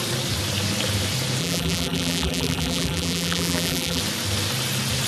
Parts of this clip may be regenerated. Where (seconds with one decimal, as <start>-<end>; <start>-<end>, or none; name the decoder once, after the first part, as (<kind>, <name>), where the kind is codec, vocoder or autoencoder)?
1.4-4.0 (vocoder, BigVGAN v2)

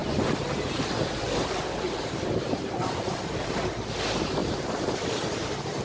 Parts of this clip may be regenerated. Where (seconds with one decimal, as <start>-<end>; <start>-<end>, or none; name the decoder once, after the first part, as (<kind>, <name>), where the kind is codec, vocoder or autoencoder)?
0.0-3.5 (vocoder, BigVGAN v2); 4.4-5.8